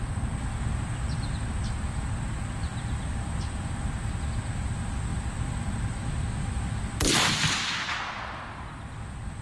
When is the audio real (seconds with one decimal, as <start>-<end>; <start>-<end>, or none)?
0.0-9.4